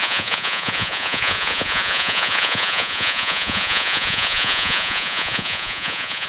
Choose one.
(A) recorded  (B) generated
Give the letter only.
B